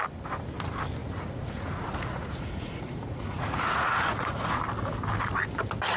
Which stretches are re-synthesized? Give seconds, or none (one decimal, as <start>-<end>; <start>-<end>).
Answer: 1.0-4.6